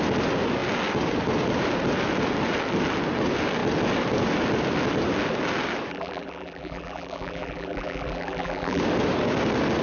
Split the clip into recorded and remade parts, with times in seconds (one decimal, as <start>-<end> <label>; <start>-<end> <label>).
0.0-5.9 recorded; 5.9-8.8 remade; 8.8-9.8 recorded